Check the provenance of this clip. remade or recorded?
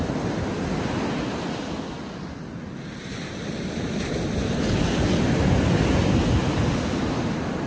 recorded